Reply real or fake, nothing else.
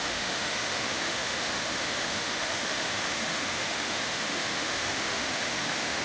fake